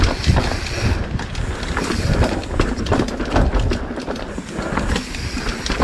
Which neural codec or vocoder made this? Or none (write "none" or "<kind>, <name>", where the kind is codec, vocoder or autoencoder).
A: none